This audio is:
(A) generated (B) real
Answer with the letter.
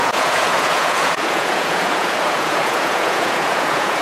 A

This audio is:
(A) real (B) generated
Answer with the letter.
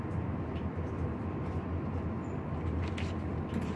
A